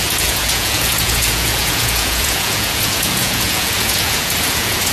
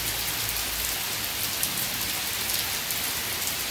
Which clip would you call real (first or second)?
second